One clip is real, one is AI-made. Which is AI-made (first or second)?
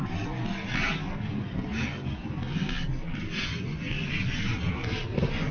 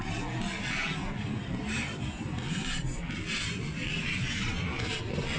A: second